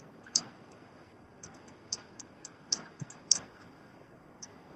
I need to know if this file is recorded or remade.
remade